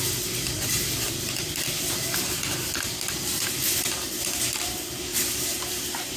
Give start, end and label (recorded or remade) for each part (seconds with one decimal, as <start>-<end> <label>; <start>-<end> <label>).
0.0-5.1 recorded; 5.1-6.2 remade